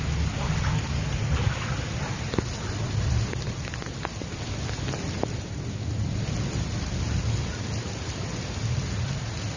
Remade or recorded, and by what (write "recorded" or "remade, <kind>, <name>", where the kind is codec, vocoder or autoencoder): recorded